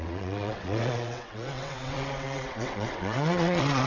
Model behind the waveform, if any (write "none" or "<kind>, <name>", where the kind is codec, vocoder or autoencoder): vocoder, WaveNeXt